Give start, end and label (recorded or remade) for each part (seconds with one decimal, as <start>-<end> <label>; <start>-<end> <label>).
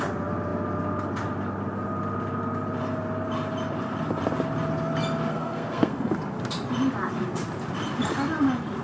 0.0-5.3 recorded; 5.3-6.2 remade; 6.2-8.8 recorded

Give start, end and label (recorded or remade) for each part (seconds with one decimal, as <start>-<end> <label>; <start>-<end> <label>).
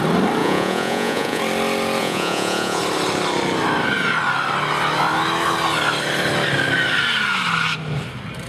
0.0-0.4 recorded; 0.4-1.4 remade; 1.4-2.0 recorded; 2.0-2.8 remade; 2.8-8.5 recorded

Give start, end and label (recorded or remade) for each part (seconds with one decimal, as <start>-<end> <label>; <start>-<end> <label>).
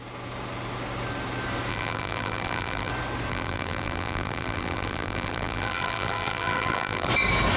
0.0-1.7 recorded; 1.7-2.9 remade; 2.9-3.3 recorded; 3.3-7.1 remade; 7.1-7.6 recorded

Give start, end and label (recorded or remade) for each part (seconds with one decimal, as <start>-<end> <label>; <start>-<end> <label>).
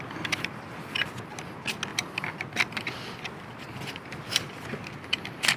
0.0-5.6 recorded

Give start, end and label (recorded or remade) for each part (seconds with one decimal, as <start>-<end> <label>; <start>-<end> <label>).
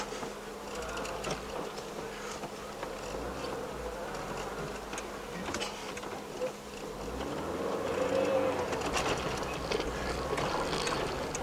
0.0-11.4 recorded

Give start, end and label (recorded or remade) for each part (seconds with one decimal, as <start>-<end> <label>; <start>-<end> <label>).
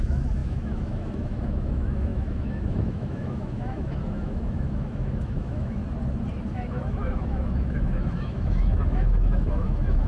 0.0-5.8 remade; 5.8-6.5 recorded; 6.5-10.1 remade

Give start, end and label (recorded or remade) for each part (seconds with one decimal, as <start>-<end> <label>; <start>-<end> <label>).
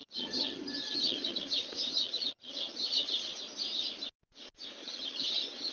0.0-3.4 remade; 3.4-4.8 recorded; 4.8-5.7 remade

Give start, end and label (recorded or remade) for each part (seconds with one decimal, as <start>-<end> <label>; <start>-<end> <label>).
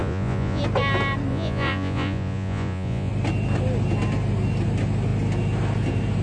0.0-0.6 remade; 0.6-1.3 recorded; 1.3-3.1 remade; 3.1-6.2 recorded